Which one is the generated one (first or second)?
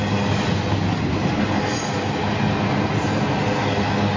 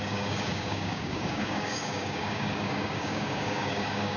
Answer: second